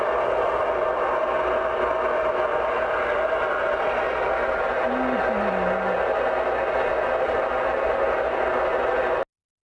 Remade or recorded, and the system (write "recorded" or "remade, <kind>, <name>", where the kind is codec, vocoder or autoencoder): recorded